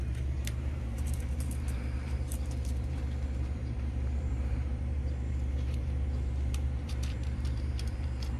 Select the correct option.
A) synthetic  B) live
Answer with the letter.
A